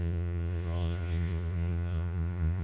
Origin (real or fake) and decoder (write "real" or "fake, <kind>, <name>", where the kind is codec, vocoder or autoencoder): fake, vocoder, Vocos